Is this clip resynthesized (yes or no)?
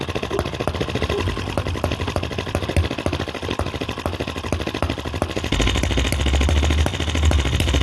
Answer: no